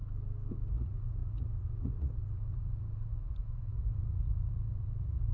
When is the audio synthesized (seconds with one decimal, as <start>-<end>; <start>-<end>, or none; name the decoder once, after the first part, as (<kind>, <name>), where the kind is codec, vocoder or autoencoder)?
0.7-5.3 (vocoder, Vocos)